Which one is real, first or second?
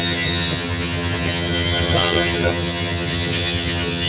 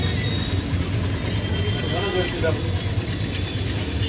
second